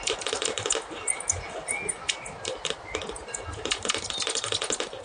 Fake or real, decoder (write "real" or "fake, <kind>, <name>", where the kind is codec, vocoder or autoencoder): real